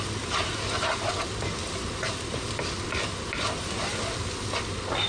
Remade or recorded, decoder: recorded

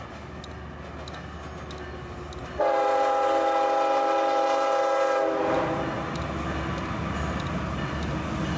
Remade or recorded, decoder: recorded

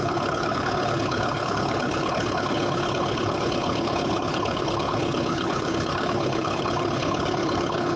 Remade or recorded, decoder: remade, codec, HILCodec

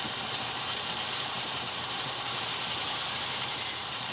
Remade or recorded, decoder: remade, vocoder, BigVGAN v2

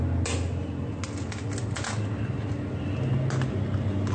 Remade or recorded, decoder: recorded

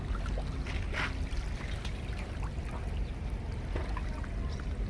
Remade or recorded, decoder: recorded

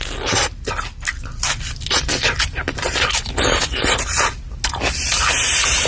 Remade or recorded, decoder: recorded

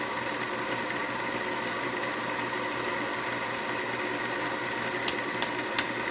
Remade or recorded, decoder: recorded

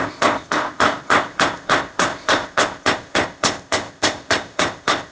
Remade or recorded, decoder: remade, codec, ZipCodec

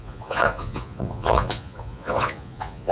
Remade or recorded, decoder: remade, vocoder, Vocos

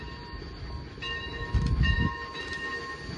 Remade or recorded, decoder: recorded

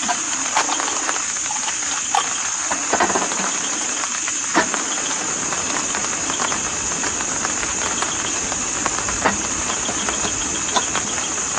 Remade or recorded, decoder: recorded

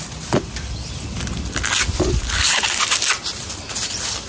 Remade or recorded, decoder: recorded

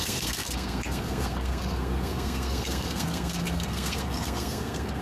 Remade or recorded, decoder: remade, codec, SNAC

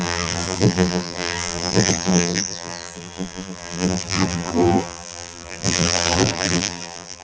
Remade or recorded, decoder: remade, vocoder, BigVGAN v2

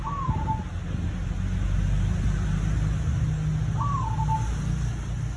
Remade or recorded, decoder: recorded